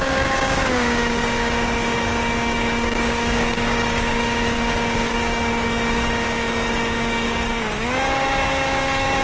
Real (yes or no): no